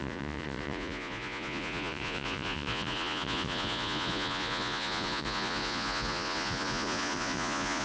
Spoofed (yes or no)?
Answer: yes